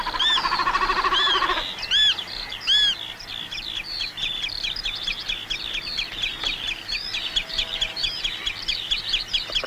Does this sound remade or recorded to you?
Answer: recorded